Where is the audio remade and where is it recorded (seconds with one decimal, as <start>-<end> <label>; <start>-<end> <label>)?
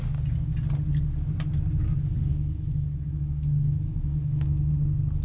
0.0-2.3 recorded; 2.3-4.7 remade; 4.7-5.2 recorded